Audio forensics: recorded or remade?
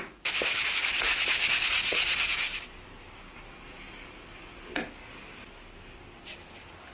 recorded